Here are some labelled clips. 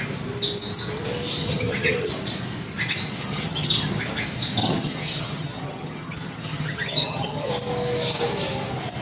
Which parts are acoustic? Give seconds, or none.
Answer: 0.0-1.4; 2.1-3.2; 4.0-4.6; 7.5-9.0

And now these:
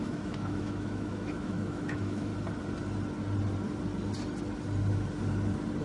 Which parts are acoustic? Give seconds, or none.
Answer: 2.3-5.8

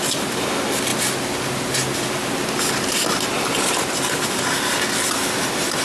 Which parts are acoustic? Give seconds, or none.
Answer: 0.0-5.8

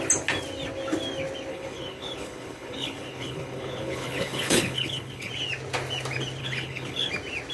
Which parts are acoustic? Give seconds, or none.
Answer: 0.0-1.5; 5.3-6.4; 7.1-7.5